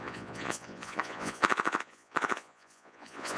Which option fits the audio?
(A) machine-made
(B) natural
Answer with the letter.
A